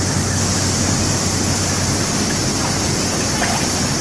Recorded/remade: recorded